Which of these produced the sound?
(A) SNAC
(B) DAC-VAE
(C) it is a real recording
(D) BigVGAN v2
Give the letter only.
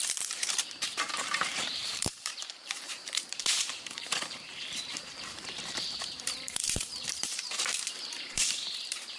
D